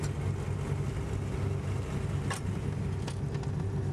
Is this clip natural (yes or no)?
yes